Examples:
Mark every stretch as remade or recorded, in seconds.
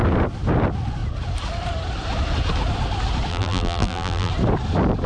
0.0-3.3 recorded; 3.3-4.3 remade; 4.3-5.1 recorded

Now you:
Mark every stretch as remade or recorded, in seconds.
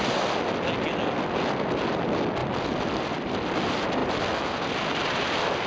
0.0-2.4 recorded; 2.4-3.3 remade; 3.3-5.7 recorded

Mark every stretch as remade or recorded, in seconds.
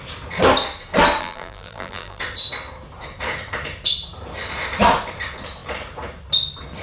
0.0-1.2 recorded; 1.2-2.2 remade; 2.2-6.8 recorded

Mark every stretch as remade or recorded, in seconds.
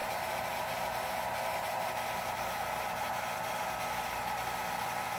0.0-3.1 remade; 3.1-5.2 recorded